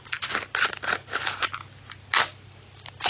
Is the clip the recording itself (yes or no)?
yes